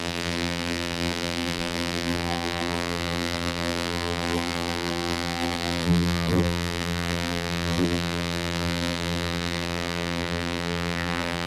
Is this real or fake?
fake